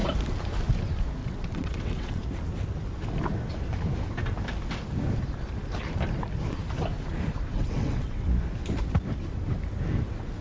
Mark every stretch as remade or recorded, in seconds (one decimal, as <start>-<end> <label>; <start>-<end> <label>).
0.0-1.2 recorded; 1.2-2.2 remade; 2.2-7.5 recorded; 7.5-8.3 remade; 8.3-10.4 recorded